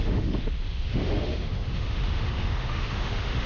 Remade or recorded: remade